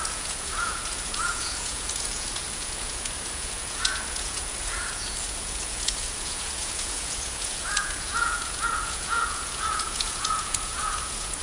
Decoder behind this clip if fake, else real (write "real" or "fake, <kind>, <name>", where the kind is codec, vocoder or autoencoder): fake, vocoder, Vocos